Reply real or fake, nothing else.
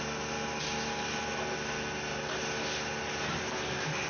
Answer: real